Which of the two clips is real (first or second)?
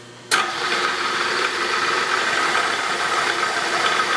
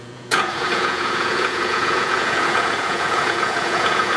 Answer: first